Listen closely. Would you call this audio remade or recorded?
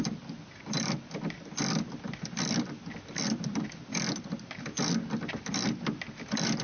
recorded